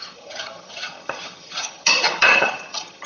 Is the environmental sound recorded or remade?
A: remade